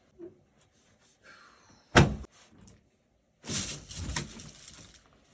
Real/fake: real